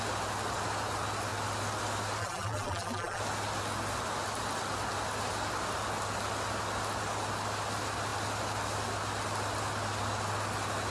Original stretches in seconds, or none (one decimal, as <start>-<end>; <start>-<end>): 0.0-2.2; 3.2-10.9